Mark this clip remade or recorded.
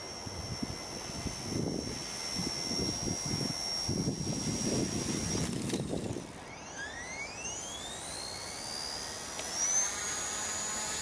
recorded